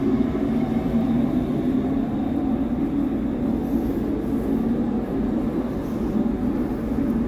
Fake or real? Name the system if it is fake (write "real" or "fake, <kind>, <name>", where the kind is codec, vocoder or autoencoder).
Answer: real